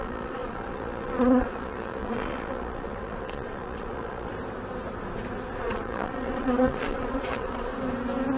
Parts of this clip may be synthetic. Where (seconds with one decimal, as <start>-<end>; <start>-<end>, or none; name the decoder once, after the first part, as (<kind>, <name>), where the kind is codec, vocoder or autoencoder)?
0.0-4.3 (vocoder, Vocos); 5.6-7.7